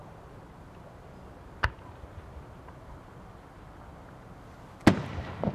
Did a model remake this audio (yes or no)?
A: no